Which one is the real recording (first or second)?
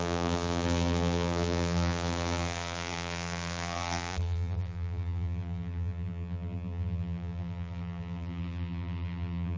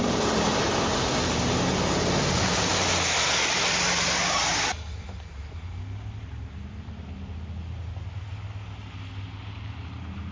second